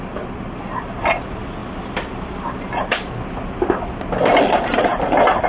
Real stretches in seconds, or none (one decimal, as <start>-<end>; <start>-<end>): 0.0-5.5